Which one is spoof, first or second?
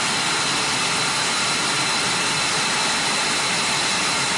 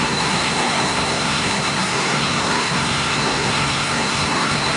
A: second